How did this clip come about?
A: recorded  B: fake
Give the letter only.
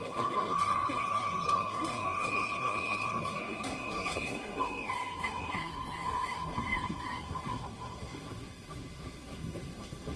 B